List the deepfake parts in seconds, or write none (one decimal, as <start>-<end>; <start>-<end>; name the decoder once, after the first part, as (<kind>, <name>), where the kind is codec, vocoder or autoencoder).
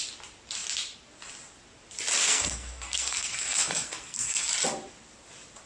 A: 2.2-4.5 (codec, SNAC)